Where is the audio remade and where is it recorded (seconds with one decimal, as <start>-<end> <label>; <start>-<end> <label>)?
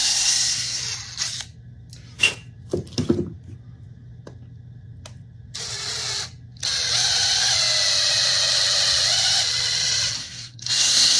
0.0-0.8 remade; 0.8-10.2 recorded; 10.2-11.2 remade